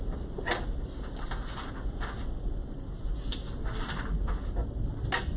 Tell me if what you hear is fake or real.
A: real